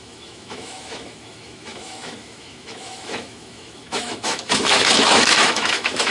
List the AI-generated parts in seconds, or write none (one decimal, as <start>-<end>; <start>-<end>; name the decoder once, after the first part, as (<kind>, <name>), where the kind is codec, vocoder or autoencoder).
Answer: 0.0-6.1 (autoencoder, DAC-VAE)